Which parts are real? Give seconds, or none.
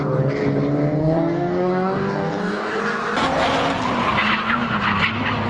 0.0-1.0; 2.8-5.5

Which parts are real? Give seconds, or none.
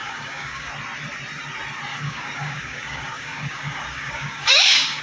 0.7-1.9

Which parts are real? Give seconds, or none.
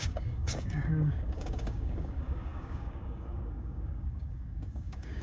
none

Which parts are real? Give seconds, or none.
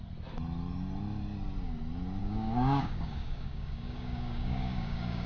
0.0-2.2